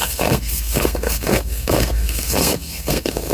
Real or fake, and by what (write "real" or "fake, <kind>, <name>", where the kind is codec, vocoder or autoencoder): fake, codec, SNAC